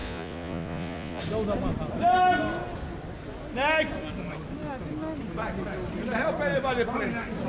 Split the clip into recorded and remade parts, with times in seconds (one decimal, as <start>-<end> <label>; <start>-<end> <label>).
0.0-1.2 remade; 1.2-7.5 recorded